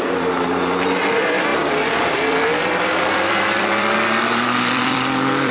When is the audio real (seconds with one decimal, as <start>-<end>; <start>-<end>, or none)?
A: none